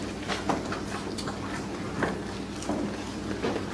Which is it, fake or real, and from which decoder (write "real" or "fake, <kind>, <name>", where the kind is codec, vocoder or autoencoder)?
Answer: real